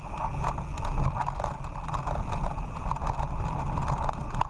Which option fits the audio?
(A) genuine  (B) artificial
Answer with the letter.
A